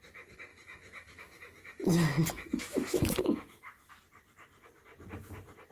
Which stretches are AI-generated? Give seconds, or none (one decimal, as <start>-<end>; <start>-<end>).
0.5-3.9